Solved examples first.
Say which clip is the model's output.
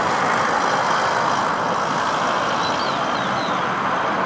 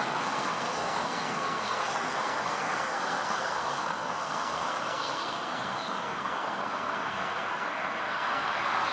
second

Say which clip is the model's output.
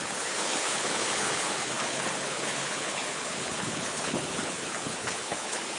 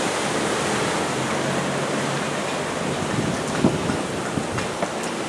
first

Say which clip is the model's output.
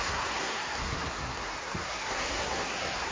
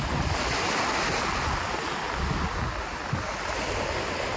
first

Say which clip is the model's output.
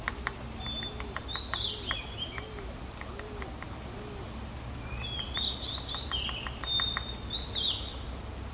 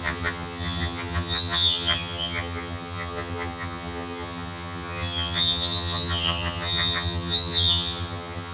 second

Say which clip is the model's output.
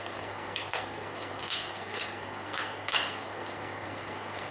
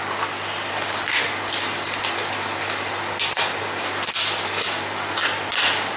first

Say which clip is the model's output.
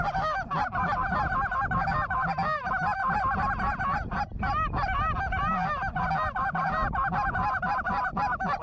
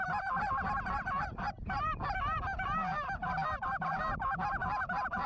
second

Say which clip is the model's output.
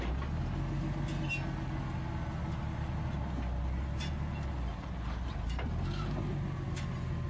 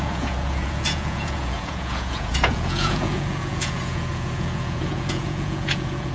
second